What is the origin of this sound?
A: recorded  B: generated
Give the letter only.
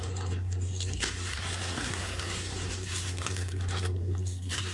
B